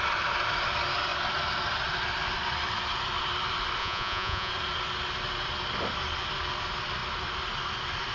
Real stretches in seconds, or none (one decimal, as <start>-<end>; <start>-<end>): 0.0-3.8; 4.5-8.1